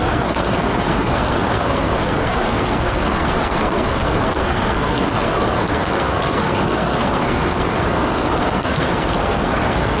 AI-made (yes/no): yes